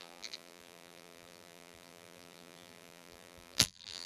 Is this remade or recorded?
remade